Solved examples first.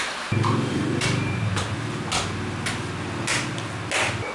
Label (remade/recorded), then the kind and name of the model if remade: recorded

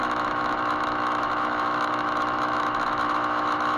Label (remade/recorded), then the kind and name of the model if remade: remade, autoencoder, DAC-VAE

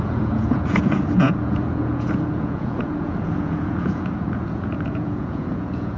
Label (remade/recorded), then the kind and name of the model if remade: remade, vocoder, Vocos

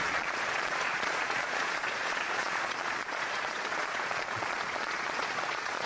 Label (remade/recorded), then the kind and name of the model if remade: remade, vocoder, Vocos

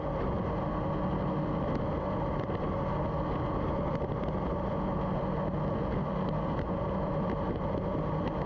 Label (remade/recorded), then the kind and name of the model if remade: recorded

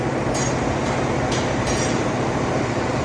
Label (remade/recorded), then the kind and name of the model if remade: remade, vocoder, BigVGAN v2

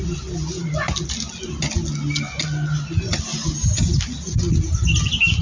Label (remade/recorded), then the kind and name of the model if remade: recorded